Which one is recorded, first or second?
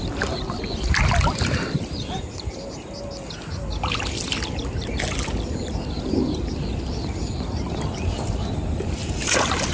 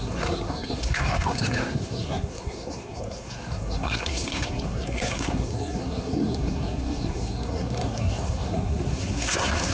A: first